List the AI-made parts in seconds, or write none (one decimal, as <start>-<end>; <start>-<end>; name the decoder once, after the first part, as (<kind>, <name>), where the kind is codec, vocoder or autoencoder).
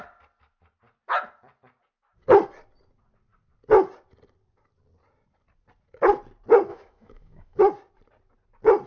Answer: 6.7-7.6 (autoencoder, DAC-VAE)